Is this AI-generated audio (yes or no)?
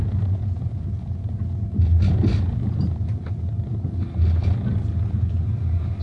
no